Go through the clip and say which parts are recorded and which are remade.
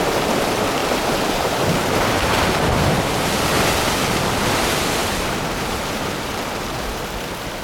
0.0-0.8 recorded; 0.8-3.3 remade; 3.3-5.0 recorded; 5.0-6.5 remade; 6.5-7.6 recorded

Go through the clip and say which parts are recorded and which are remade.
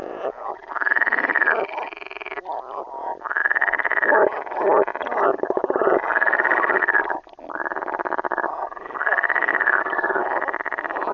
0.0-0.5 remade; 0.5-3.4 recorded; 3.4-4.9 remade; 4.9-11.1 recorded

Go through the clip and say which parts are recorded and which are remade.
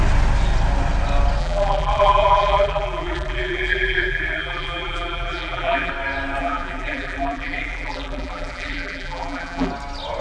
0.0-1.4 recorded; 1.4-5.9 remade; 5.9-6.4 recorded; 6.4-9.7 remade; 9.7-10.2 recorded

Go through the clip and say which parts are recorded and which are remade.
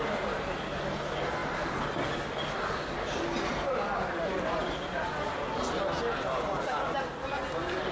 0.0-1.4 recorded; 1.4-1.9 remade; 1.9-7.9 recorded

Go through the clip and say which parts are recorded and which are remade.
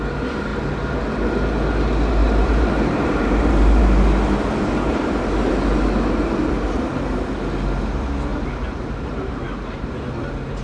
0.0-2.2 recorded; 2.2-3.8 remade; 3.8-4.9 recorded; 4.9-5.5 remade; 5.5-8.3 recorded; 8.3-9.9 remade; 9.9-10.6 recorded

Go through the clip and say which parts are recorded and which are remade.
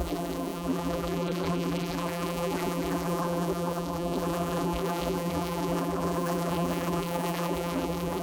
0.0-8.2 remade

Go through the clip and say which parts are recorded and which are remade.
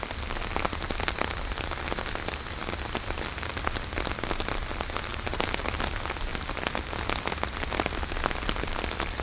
0.0-5.1 recorded; 5.1-5.6 remade; 5.6-9.2 recorded